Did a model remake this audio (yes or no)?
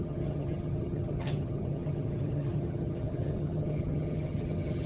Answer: yes